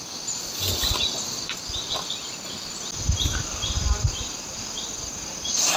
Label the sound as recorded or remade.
recorded